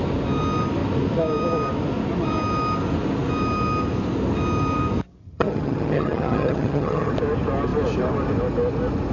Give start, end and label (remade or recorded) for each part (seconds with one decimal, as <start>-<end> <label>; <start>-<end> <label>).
0.0-5.2 recorded; 5.2-7.1 remade; 7.1-9.1 recorded